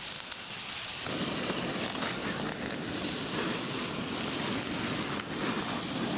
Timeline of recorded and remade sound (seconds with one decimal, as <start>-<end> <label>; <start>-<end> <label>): 0.0-6.2 recorded